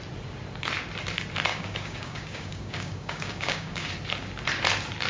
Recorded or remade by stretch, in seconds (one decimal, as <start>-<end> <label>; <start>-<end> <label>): 0.0-1.5 recorded; 1.5-3.9 remade; 3.9-5.1 recorded